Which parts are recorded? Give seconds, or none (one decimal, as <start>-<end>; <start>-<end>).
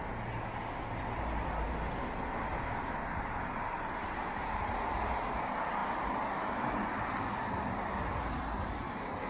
0.0-9.3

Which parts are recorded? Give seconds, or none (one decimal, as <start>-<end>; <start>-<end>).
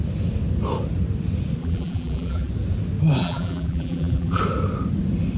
0.0-1.6; 2.5-3.2; 4.4-5.4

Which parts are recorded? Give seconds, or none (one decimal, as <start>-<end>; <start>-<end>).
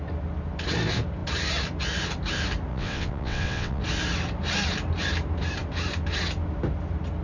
0.0-2.7; 3.8-7.2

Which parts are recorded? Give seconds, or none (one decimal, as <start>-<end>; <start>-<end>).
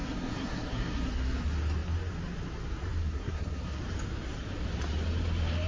1.1-3.0; 3.8-5.7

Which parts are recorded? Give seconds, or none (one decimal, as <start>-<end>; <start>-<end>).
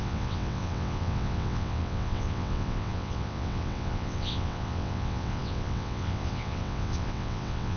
none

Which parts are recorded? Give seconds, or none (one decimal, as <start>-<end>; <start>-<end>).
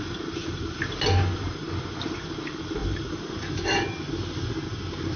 0.0-0.4; 1.7-2.8; 3.5-5.2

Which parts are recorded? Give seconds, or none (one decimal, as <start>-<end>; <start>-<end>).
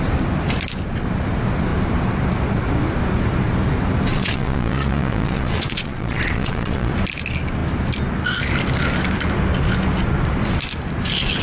0.0-4.1; 6.9-11.4